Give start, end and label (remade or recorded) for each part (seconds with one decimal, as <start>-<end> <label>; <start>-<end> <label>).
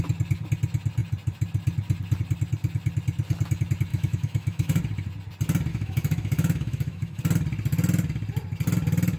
0.0-3.9 recorded; 3.9-4.8 remade; 4.8-5.7 recorded; 5.7-7.2 remade; 7.2-9.2 recorded